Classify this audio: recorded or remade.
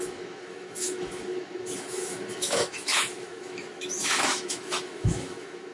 remade